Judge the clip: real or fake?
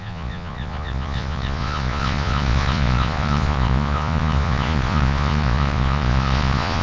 fake